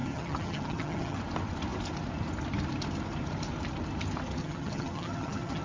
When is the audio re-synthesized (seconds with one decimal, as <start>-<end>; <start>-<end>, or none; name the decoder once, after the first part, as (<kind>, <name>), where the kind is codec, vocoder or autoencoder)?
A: 0.0-1.2 (vocoder, HiFi-GAN); 4.4-5.6